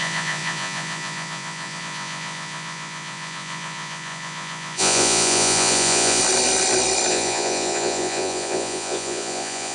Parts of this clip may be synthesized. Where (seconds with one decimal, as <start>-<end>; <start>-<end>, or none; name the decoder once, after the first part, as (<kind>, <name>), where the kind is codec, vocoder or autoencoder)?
0.0-6.2 (vocoder, Vocos); 7.1-9.7